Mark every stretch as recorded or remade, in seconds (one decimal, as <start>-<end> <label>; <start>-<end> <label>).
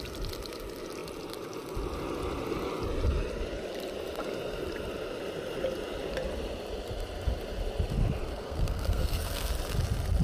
0.0-8.3 recorded; 8.3-9.5 remade; 9.5-10.2 recorded